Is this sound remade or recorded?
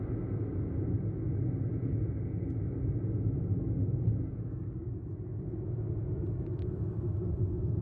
recorded